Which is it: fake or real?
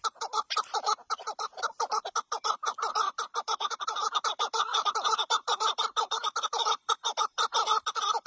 fake